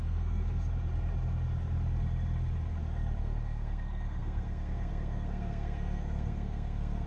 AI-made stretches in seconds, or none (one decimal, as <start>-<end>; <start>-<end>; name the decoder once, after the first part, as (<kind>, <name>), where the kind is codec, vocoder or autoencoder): 0.0-0.4 (codec, SNAC); 3.2-7.1